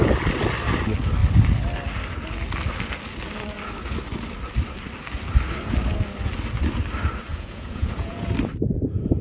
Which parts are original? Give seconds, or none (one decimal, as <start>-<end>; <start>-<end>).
0.0-7.3; 8.3-9.2